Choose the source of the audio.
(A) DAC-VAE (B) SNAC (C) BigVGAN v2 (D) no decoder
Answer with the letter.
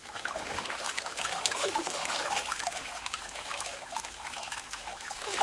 A